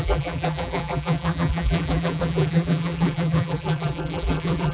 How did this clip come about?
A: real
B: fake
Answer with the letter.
B